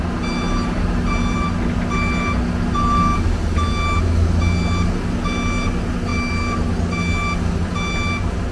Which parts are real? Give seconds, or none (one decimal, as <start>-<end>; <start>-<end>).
0.0-8.5